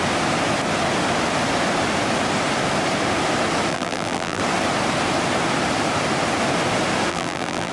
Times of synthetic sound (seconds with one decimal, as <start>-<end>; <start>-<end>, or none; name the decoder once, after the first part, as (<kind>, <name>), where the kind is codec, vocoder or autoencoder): 3.7-4.4 (vocoder, BigVGAN v2); 7.1-7.7